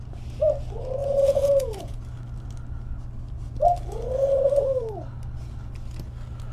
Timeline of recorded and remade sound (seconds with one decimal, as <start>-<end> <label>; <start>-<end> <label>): 0.0-1.0 recorded; 1.0-2.0 remade; 2.0-6.5 recorded